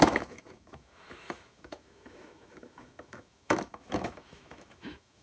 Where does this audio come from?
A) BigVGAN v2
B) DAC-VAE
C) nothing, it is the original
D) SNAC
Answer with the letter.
B